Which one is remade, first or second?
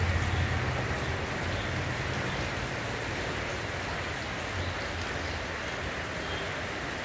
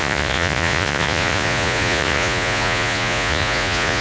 second